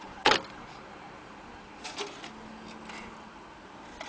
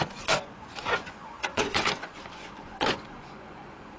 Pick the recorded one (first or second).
first